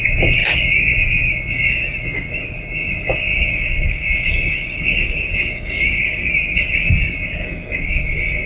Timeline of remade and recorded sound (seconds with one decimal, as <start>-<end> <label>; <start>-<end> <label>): 0.0-3.3 recorded; 3.3-6.3 remade; 6.3-7.4 recorded; 7.4-7.9 remade; 7.9-8.5 recorded